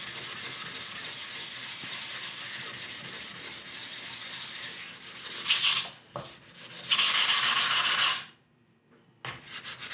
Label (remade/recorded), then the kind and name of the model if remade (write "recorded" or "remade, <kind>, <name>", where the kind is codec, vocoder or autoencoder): recorded